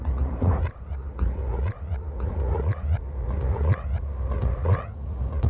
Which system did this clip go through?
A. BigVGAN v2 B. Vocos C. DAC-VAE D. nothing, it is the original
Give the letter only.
B